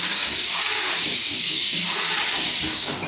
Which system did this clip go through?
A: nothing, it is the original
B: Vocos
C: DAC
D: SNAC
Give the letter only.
C